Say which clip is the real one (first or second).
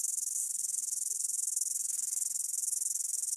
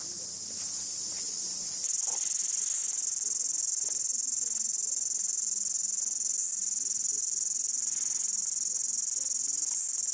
second